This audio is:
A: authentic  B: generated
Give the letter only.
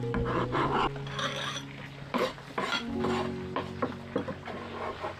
A